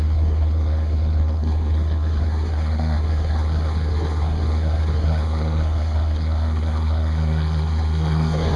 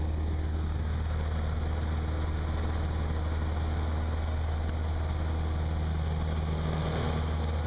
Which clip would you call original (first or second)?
second